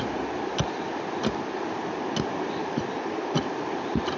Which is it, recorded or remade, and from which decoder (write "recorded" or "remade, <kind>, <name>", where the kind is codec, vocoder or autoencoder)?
remade, vocoder, BigVGAN v2